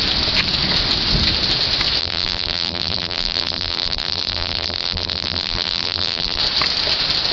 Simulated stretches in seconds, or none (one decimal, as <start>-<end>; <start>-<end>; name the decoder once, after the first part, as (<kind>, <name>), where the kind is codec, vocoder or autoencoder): 2.0-6.4 (vocoder, BigVGAN v2)